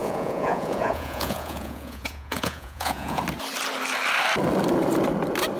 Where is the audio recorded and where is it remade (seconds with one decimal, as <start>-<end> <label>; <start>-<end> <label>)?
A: 0.0-3.2 remade; 3.2-5.6 recorded